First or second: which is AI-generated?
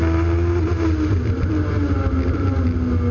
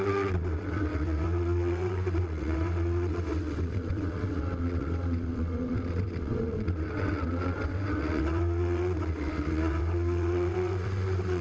second